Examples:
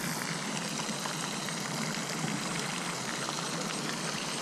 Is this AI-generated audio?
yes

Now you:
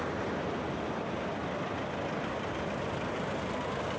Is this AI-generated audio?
no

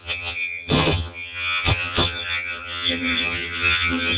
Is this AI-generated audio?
yes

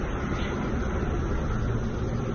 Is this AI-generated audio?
no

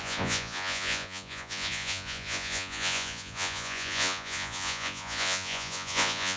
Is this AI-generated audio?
yes